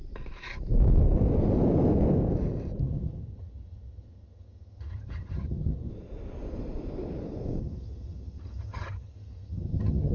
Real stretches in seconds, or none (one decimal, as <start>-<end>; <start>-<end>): 0.0-2.8; 5.9-7.6